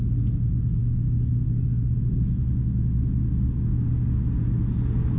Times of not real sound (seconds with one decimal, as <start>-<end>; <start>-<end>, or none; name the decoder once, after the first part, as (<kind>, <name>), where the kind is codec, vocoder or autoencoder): none

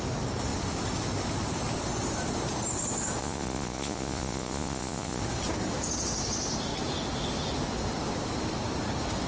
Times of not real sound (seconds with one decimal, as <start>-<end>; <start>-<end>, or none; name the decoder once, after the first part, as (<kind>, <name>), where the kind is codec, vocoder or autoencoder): 3.2-5.2 (vocoder, Vocos)